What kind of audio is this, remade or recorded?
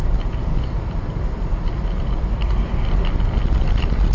recorded